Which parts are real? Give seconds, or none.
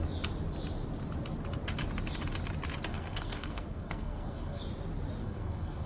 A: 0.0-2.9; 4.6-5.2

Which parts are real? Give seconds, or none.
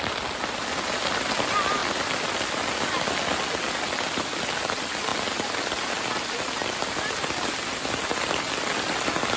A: 0.0-9.4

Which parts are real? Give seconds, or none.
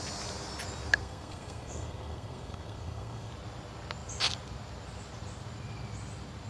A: 0.0-1.0; 3.3-6.5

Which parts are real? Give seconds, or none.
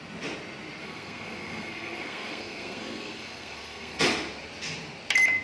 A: 0.0-0.8; 4.0-5.4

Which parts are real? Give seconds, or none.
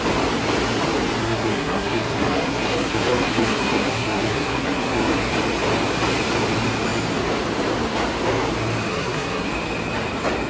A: 0.0-1.2; 5.3-8.9; 9.5-10.5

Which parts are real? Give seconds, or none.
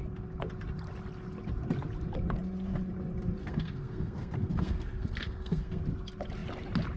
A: 0.0-3.4; 5.8-7.0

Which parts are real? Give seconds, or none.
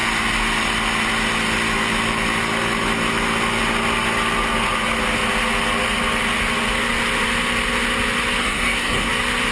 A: 0.0-8.4; 9.1-9.5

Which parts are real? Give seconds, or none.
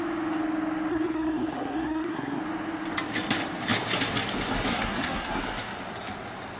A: 0.0-0.9; 2.4-4.7; 5.4-6.6